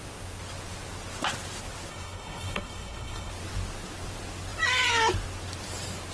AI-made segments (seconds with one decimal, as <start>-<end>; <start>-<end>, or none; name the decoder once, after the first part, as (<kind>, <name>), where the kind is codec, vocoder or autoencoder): 1.9-3.3 (codec, HILCodec)